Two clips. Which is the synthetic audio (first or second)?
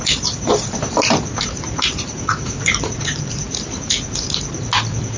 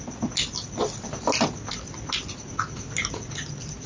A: first